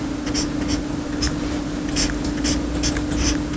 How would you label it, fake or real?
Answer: real